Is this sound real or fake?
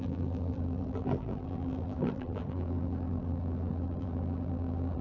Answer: fake